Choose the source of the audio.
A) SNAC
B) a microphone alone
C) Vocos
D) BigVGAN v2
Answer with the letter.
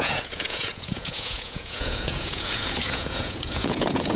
C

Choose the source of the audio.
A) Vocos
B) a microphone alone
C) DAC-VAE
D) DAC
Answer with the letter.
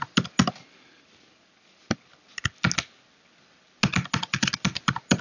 B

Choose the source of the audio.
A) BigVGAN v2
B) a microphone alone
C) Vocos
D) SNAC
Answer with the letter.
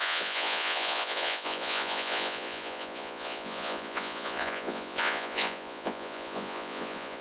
C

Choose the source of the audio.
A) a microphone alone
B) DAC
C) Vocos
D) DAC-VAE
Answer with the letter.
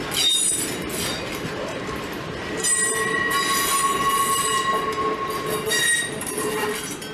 A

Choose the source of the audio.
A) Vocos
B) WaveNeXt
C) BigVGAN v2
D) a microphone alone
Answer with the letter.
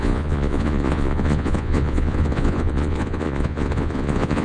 A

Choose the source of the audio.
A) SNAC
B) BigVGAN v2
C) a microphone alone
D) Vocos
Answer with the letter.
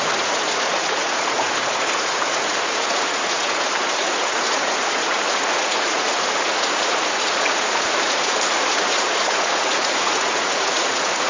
D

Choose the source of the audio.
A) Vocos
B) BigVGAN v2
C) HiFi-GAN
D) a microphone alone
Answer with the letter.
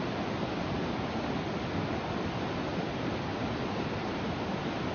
D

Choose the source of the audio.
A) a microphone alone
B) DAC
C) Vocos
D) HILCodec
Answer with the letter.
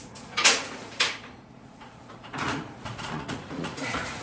C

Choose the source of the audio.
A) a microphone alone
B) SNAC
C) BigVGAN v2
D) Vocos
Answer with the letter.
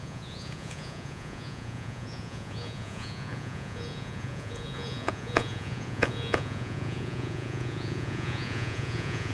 D